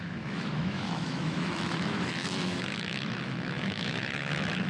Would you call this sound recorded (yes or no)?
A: no